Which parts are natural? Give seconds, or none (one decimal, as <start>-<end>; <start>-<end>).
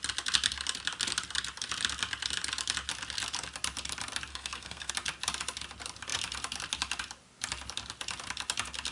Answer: 0.0-4.3; 4.9-8.9